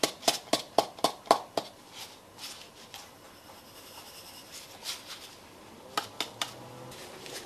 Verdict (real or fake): real